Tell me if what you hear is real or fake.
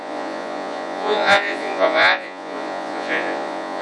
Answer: fake